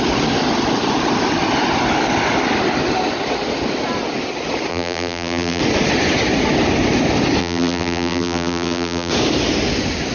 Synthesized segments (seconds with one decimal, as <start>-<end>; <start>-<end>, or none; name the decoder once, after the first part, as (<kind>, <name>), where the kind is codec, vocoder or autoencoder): 4.7-5.6 (vocoder, BigVGAN v2); 7.4-9.1